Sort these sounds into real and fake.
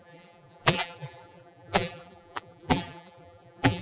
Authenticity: fake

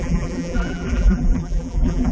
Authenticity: fake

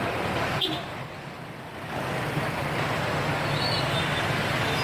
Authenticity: fake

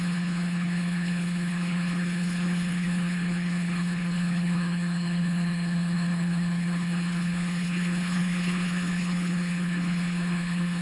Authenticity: fake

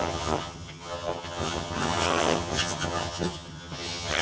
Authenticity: fake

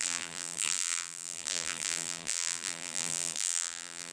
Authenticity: fake